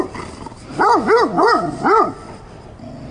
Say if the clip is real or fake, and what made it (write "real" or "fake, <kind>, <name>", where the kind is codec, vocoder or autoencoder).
real